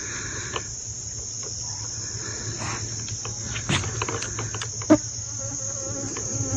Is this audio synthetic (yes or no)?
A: no